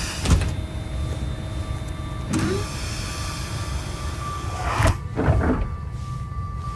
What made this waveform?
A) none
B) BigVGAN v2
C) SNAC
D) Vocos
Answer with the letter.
A